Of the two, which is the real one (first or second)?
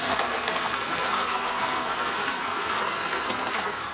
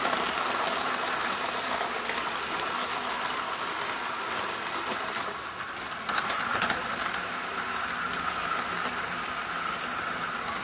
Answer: second